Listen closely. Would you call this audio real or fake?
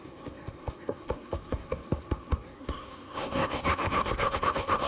fake